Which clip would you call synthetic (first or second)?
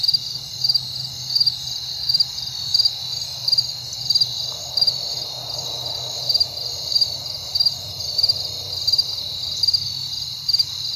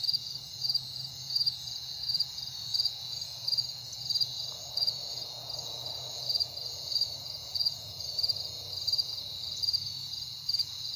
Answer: second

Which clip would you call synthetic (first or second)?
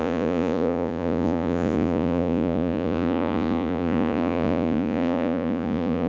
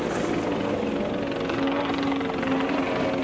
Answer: first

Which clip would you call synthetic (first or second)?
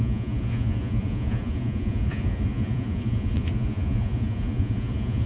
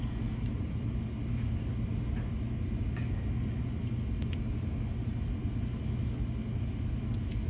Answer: first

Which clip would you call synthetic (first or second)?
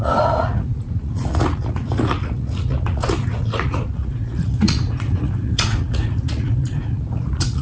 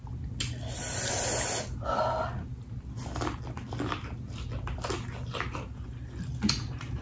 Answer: first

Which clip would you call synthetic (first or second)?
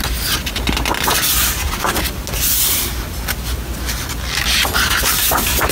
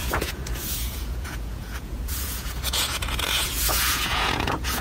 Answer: second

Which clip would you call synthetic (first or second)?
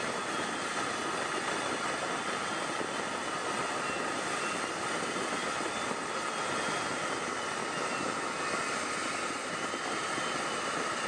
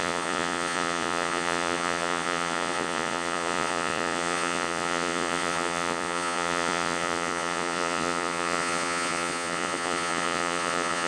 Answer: second